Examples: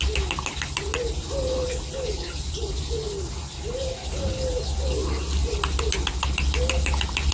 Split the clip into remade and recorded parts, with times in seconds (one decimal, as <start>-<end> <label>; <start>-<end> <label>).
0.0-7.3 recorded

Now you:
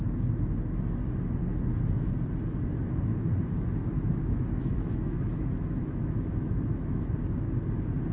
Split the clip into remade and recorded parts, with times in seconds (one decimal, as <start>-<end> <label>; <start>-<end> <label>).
0.0-1.4 recorded; 1.4-2.1 remade; 2.1-3.8 recorded; 3.8-7.1 remade; 7.1-8.1 recorded

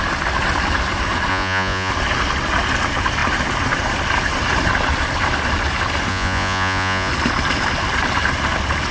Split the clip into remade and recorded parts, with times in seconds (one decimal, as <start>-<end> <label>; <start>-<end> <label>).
0.0-1.3 recorded; 1.3-1.9 remade; 1.9-6.1 recorded; 6.1-7.1 remade; 7.1-8.9 recorded

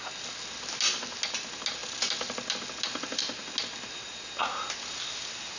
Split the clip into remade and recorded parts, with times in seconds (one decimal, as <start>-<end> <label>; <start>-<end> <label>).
0.0-5.6 recorded

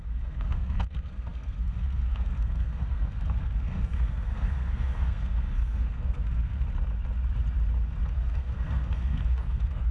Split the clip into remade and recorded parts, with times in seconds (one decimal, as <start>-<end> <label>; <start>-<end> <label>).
0.0-6.7 remade; 6.7-8.1 recorded; 8.1-9.9 remade

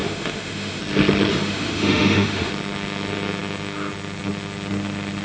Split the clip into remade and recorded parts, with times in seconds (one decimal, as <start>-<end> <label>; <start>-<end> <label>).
0.0-0.8 remade; 0.8-1.3 recorded; 1.3-2.5 remade; 2.5-5.2 recorded

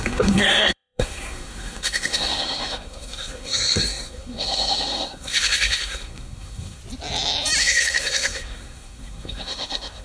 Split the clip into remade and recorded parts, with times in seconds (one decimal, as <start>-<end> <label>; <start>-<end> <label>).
0.0-6.8 remade; 6.8-7.6 recorded; 7.6-10.0 remade